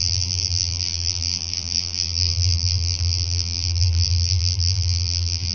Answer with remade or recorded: remade